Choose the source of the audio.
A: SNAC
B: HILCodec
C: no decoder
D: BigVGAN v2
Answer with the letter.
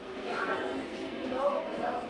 A